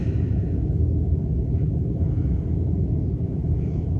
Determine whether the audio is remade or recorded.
remade